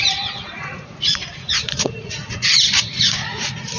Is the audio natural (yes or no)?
no